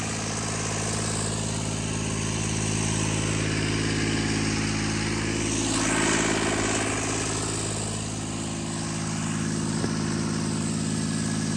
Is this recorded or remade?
recorded